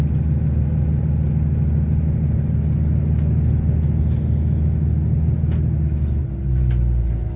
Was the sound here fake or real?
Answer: real